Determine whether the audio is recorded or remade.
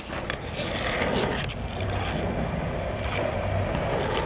recorded